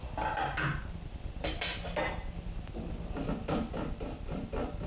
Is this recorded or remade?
recorded